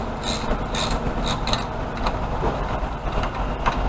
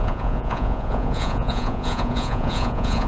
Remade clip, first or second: second